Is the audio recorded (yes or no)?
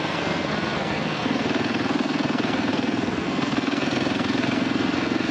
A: no